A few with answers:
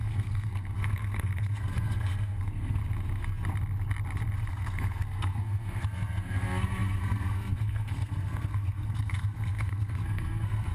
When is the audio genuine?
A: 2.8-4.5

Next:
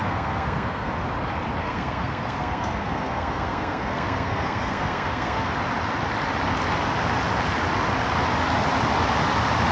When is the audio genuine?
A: 0.9-1.6; 5.5-9.7

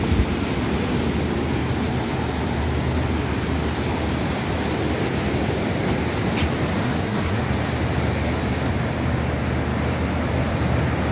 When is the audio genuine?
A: 0.0-6.8; 7.4-11.1

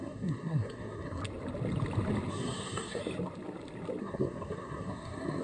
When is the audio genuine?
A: 1.2-2.3; 3.0-4.0